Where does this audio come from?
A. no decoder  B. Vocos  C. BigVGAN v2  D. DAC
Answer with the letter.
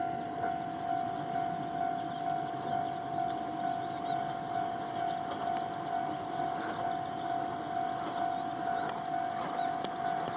A